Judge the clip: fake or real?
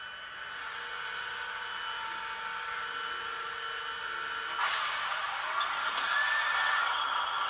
real